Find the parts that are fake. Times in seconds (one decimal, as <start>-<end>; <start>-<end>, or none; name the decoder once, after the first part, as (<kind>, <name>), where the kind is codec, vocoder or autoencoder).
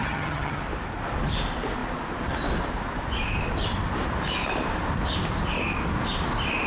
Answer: 0.0-0.6 (vocoder, HiFi-GAN)